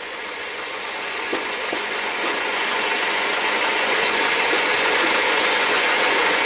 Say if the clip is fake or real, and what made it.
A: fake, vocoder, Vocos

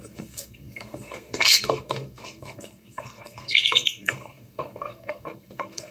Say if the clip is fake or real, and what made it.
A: fake, codec, SNAC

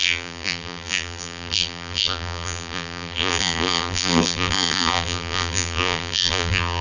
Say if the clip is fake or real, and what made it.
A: fake, vocoder, BigVGAN v2